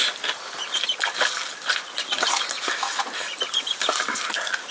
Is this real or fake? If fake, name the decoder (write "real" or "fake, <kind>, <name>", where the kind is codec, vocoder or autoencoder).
real